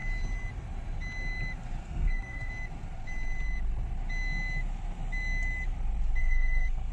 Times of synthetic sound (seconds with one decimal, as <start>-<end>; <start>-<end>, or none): 1.8-2.5; 6.2-6.9